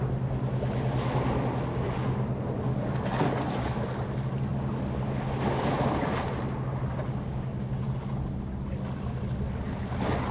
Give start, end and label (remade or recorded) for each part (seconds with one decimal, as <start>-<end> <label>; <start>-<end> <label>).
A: 0.0-10.3 recorded